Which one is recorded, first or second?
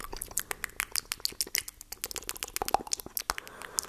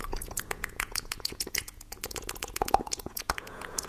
first